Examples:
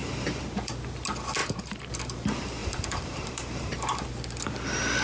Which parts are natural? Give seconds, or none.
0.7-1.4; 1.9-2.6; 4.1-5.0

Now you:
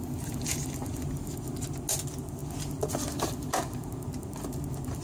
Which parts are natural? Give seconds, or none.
0.0-0.5; 1.5-5.0

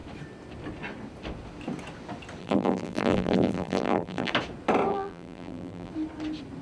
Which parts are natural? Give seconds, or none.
0.0-2.4; 4.3-4.9; 5.9-6.6

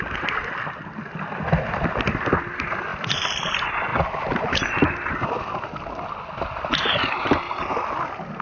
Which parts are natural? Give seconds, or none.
0.0-2.9; 3.5-3.9; 4.7-8.4

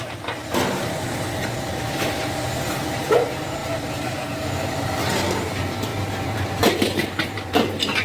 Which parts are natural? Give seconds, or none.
none

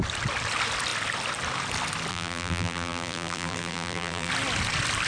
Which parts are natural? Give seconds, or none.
0.0-2.1; 4.3-5.1

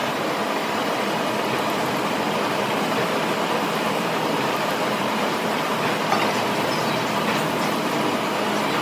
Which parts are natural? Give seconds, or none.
0.0-3.7; 5.7-8.8